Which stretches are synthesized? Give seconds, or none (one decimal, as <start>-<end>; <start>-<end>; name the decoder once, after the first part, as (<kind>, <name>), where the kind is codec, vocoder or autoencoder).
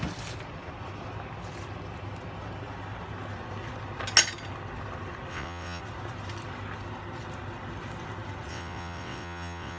5.3-5.8 (vocoder, WaveNeXt); 8.5-9.8